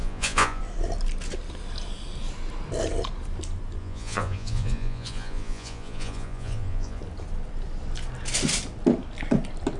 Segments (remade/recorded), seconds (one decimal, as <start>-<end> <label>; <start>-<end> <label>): 0.0-0.6 remade; 0.6-3.8 recorded; 3.8-7.0 remade; 7.0-9.8 recorded